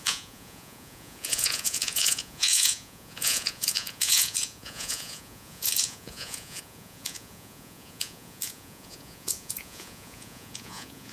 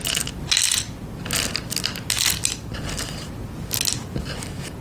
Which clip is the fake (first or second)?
first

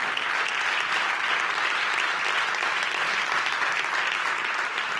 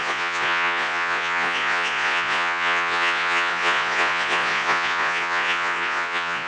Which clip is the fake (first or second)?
second